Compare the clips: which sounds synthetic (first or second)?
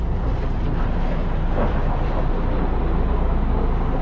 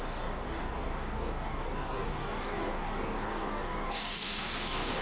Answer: second